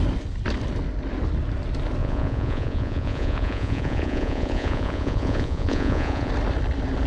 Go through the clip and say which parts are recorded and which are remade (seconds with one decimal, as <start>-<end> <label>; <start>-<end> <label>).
0.0-2.0 recorded; 2.0-6.3 remade; 6.3-7.1 recorded